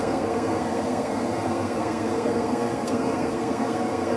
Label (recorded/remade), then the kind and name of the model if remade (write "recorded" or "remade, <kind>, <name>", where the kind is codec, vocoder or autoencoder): remade, codec, SNAC